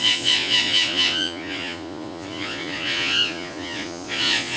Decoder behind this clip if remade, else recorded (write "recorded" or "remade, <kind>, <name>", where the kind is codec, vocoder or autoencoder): remade, vocoder, Vocos